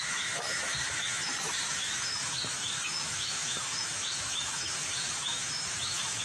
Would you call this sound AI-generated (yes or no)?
yes